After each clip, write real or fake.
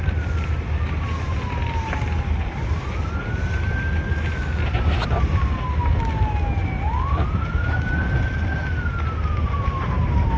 real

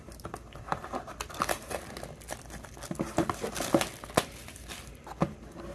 real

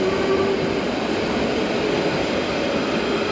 real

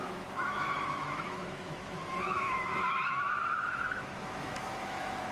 fake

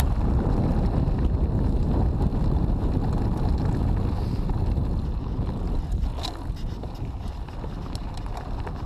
real